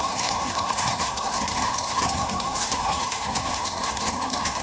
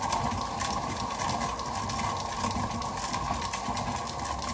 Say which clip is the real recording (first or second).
second